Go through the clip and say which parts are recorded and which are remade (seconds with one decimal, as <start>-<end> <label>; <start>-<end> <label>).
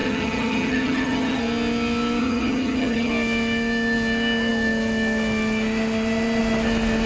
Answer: 0.0-1.4 remade; 1.4-2.2 recorded; 2.2-3.1 remade; 3.1-7.1 recorded